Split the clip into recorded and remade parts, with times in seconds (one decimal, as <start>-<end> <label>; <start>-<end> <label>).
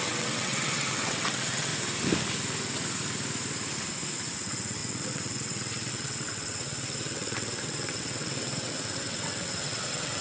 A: 0.0-1.7 remade; 1.7-4.1 recorded; 4.1-10.2 remade